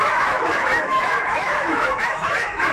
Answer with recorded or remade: remade